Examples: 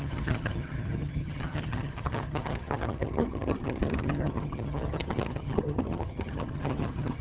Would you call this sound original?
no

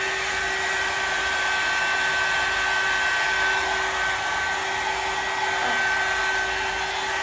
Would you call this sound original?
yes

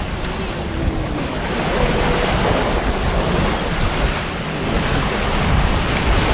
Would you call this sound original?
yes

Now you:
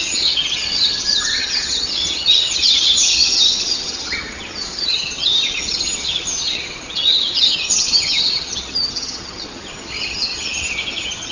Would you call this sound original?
no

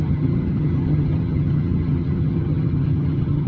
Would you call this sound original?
no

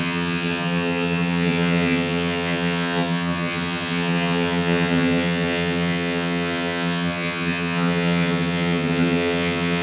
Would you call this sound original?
no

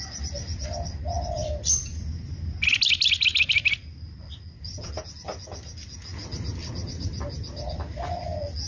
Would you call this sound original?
yes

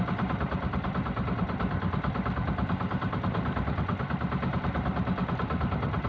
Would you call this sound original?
yes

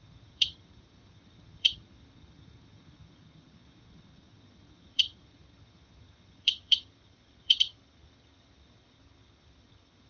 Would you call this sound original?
no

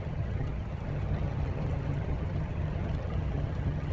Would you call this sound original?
no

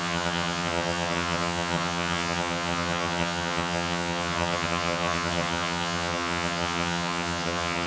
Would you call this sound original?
no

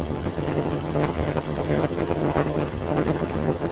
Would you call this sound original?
no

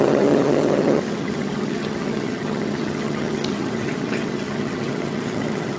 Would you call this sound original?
no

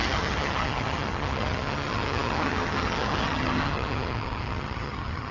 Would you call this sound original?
no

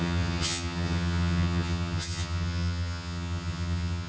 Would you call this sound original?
no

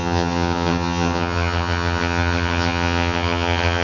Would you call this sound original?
no